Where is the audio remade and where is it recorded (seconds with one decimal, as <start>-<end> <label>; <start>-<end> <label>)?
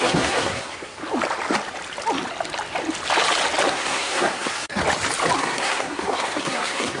0.0-1.0 remade; 1.0-3.7 recorded; 3.7-4.8 remade; 4.8-5.4 recorded; 5.4-7.0 remade